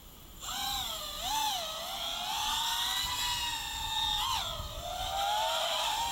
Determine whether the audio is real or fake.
real